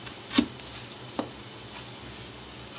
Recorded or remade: recorded